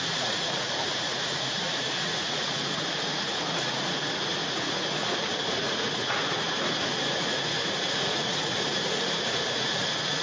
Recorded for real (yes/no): no